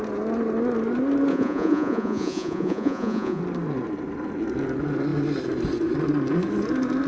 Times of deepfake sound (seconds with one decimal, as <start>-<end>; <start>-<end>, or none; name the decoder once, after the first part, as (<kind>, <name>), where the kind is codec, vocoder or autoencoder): 1.3-3.4 (vocoder, Vocos)